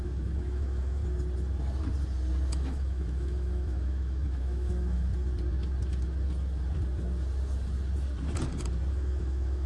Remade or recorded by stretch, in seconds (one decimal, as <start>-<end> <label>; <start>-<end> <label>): 0.0-1.0 remade; 1.0-2.5 recorded; 2.5-5.1 remade; 5.1-8.9 recorded; 8.9-9.7 remade